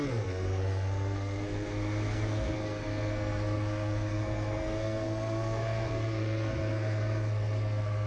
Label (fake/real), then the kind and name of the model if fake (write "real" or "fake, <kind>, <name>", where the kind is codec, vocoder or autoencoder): fake, codec, SNAC